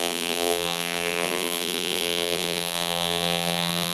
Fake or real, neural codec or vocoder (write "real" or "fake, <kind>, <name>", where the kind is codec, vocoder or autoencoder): fake, vocoder, BigVGAN v2